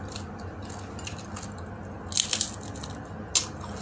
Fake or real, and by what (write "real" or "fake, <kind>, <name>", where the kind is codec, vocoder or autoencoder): real